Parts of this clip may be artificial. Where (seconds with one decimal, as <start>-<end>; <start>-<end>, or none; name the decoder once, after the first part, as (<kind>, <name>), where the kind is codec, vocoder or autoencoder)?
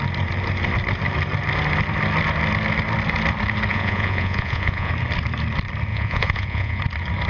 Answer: 3.7-4.9 (vocoder, Vocos); 5.9-6.8